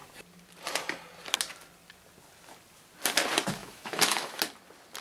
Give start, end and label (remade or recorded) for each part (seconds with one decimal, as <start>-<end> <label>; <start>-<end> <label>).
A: 0.0-3.6 recorded; 3.6-4.4 remade; 4.4-5.0 recorded